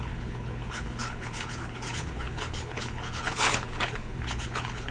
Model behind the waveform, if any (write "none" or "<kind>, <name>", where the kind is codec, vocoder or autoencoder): codec, HILCodec